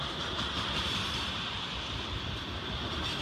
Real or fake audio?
fake